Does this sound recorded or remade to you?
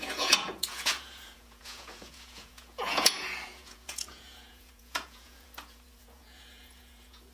remade